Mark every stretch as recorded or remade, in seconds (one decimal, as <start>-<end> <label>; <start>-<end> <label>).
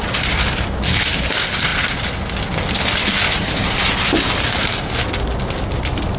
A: 0.0-6.2 recorded